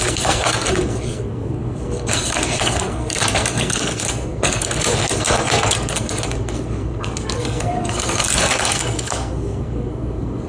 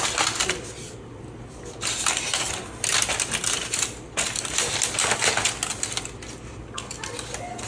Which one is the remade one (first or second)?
first